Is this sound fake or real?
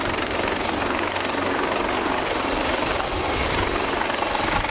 real